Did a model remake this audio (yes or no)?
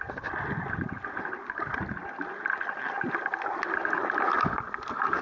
no